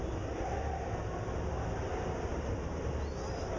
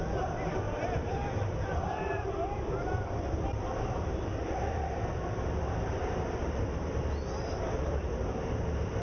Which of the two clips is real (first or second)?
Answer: first